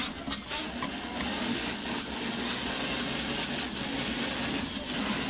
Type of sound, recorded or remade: recorded